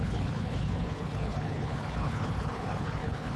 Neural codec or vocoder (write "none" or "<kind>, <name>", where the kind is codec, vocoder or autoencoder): codec, HILCodec